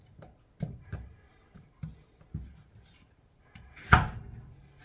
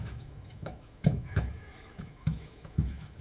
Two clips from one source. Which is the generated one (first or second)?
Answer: second